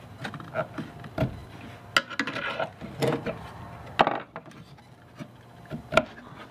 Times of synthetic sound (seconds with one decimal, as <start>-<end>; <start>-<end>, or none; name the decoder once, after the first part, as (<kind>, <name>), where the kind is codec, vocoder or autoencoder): none